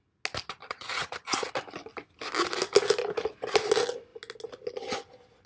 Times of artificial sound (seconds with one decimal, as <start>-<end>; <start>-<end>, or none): 0.6-1.5